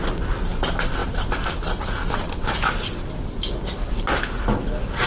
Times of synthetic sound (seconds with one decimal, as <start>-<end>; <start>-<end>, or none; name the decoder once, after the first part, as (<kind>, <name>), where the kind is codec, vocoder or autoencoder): none